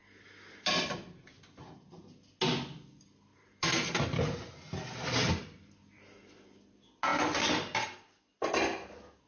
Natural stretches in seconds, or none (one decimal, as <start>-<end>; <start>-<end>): 0.0-9.3